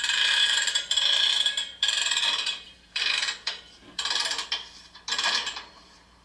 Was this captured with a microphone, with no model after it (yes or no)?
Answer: no